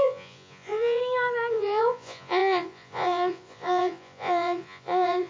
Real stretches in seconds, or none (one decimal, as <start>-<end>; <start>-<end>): 1.0-1.5